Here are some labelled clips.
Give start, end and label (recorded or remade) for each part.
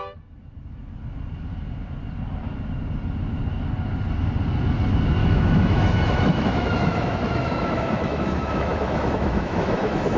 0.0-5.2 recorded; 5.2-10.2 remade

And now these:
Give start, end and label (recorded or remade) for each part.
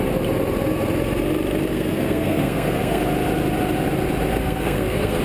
0.0-1.7 recorded; 1.7-3.0 remade; 3.0-4.4 recorded; 4.4-5.2 remade